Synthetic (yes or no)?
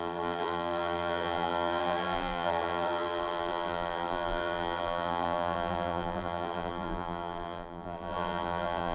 yes